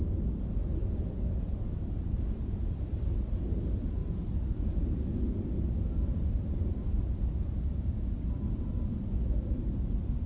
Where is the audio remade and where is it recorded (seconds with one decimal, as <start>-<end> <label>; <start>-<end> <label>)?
0.0-0.8 remade; 0.8-2.1 recorded; 2.1-4.0 remade; 4.0-6.3 recorded; 6.3-10.3 remade